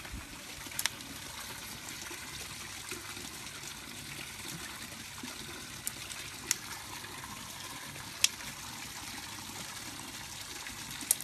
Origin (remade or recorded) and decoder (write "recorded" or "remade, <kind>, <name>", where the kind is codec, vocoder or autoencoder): recorded